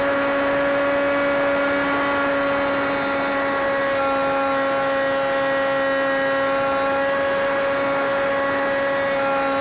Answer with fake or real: real